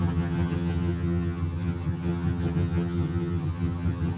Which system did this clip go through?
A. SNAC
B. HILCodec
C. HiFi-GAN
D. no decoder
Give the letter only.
C